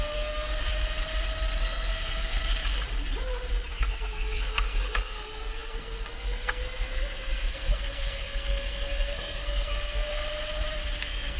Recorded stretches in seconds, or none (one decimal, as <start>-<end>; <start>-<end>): 0.5-1.6; 2.4-3.7; 10.2-11.0